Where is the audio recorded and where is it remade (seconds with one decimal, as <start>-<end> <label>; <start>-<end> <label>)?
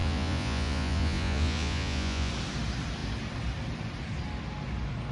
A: 0.0-2.3 remade; 2.3-5.1 recorded